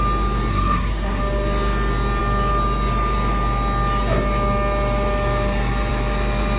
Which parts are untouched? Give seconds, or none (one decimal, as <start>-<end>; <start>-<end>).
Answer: 0.0-0.5; 1.2-6.6